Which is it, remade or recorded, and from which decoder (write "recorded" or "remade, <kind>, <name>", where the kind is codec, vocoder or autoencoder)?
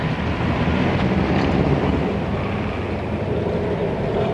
remade, vocoder, BigVGAN v2